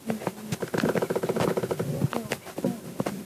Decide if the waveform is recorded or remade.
recorded